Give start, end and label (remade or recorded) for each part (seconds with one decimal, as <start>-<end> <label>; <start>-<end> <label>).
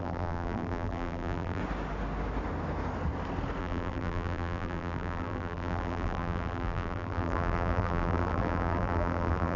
0.0-1.6 remade; 1.6-3.6 recorded; 3.6-9.6 remade